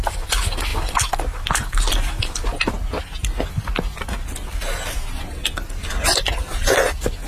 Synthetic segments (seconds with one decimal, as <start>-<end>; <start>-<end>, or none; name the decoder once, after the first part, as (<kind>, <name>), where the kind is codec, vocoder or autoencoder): none